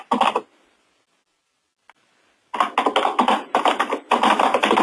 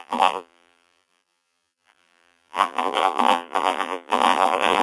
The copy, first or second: second